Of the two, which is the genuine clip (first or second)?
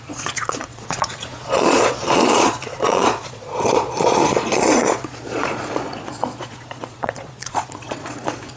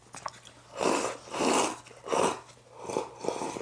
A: second